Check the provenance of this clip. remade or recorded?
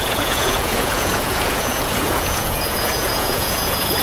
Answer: remade